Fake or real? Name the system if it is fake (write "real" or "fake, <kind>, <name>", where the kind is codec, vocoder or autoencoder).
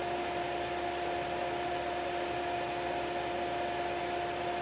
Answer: real